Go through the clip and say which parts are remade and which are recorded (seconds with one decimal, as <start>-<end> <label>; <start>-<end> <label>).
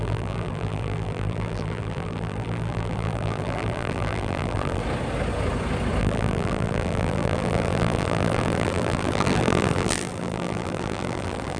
0.0-4.8 remade; 4.8-6.0 recorded; 6.0-11.6 remade